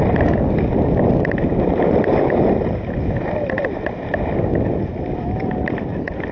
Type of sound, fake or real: real